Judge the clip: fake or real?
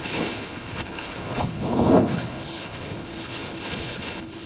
fake